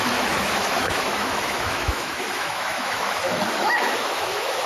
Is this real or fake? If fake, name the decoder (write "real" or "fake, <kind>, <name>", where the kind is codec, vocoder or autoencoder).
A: fake, autoencoder, DAC-VAE